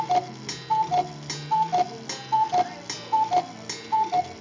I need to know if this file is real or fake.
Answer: real